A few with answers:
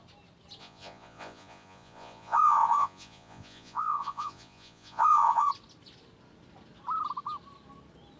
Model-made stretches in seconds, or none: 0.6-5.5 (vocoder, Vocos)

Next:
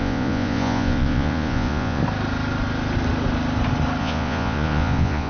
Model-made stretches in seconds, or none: 0.0-2.0 (vocoder, Vocos); 4.0-5.3

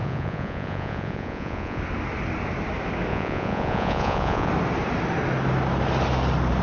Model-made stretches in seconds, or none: 0.0-1.8 (vocoder, Vocos); 3.1-4.5

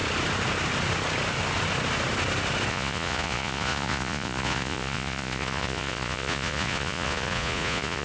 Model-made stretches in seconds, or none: 2.7-8.0 (vocoder, Vocos)

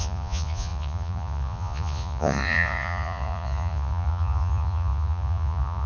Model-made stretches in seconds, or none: 0.0-5.9 (vocoder, Vocos)

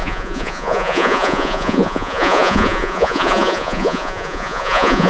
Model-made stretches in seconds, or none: 0.0-5.1 (vocoder, Vocos)

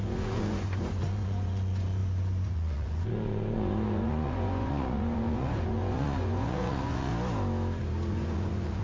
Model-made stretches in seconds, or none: 0.0-7.1 (vocoder, Vocos); 8.1-8.8

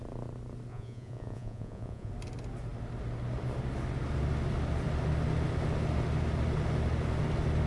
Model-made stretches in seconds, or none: 0.7-2.1 (vocoder, Vocos)